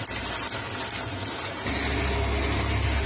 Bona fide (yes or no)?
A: yes